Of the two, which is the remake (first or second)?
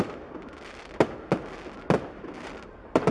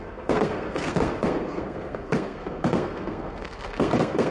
second